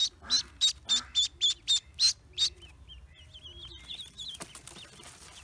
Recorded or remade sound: recorded